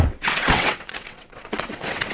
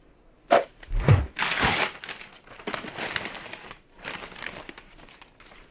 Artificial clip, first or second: first